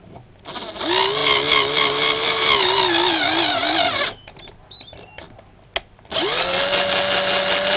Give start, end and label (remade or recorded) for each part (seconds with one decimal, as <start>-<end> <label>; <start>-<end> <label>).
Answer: 0.0-7.8 recorded